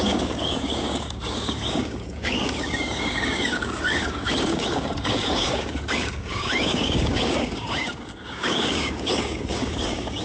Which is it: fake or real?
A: fake